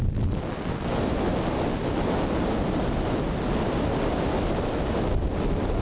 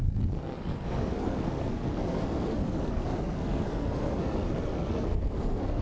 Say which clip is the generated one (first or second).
second